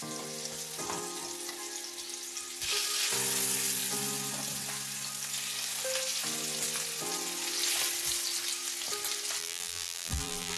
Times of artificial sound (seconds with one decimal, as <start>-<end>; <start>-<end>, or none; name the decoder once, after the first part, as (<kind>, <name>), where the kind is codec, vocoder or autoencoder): 9.4-10.6 (vocoder, BigVGAN v2)